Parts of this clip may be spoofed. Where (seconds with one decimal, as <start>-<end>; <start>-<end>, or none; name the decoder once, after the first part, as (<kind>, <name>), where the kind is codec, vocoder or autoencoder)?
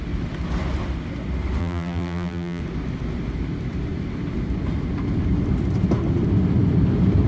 1.6-2.6 (vocoder, BigVGAN v2)